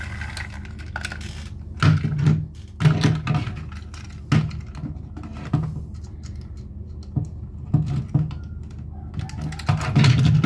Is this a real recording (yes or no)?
yes